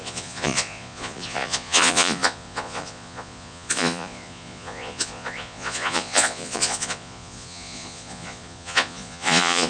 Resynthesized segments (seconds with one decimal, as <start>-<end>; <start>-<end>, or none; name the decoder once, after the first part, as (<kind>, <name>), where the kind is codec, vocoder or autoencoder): 0.0-9.7 (vocoder, Vocos)